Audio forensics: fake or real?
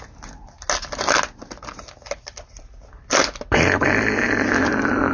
real